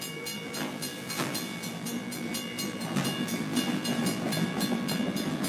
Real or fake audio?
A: fake